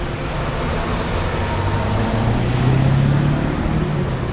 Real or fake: real